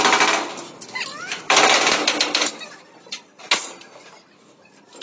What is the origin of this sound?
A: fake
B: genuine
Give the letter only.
B